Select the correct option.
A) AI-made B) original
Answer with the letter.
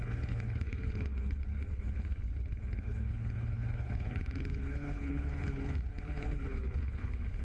A